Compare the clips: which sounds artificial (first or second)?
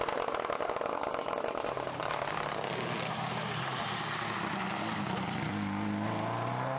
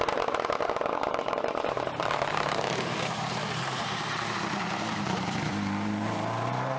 second